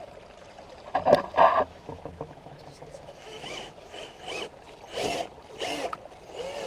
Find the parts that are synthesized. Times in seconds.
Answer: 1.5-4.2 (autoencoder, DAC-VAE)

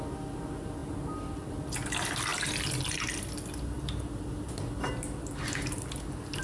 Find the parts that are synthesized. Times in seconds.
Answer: none

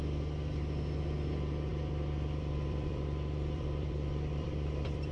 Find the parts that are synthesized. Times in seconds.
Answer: 1.7-5.1 (vocoder, BigVGAN v2)

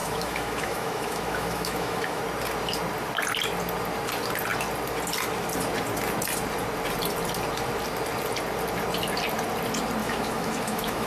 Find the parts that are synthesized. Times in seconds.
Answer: 0.0-2.2 (autoencoder, DAC-VAE); 10.0-11.1